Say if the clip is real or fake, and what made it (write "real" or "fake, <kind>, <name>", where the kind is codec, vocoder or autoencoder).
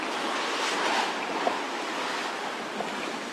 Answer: real